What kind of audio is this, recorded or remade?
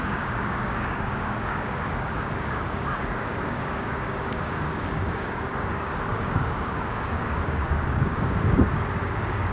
remade